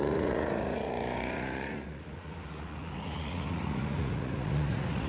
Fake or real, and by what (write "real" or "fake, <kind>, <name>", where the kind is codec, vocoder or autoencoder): fake, vocoder, Vocos